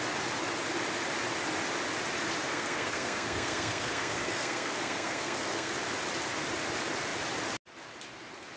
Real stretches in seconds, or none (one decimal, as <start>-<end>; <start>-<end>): 0.0-2.5; 5.7-8.6